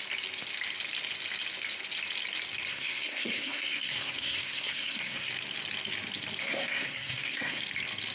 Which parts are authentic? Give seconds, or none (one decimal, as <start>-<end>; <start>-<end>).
0.0-2.7; 5.3-6.4; 7.6-8.1